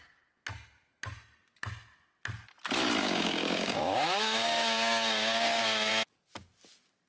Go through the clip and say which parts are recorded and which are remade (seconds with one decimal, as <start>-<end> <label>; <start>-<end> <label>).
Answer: 0.0-3.0 recorded; 3.0-5.9 remade; 5.9-7.1 recorded